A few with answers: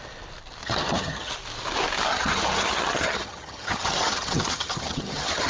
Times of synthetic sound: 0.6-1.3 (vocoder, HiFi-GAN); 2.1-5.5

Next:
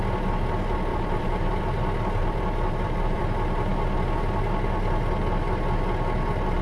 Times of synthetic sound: 0.9-1.6 (vocoder, BigVGAN v2); 2.2-3.2

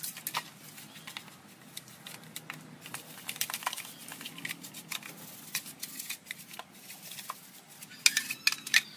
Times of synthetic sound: none

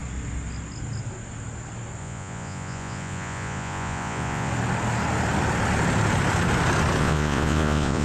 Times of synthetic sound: 2.0-4.5 (vocoder, Vocos); 7.0-8.0